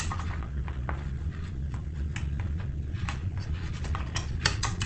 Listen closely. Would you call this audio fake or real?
fake